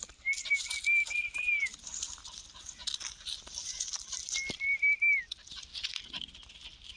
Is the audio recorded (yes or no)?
yes